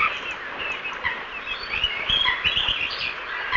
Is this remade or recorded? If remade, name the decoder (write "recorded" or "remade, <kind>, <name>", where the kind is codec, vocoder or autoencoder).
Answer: recorded